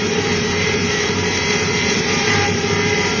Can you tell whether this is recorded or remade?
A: remade